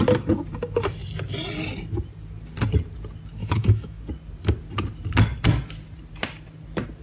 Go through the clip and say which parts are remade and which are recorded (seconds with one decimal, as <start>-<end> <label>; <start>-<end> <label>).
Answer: 0.0-3.4 recorded; 3.4-4.0 remade; 4.0-7.0 recorded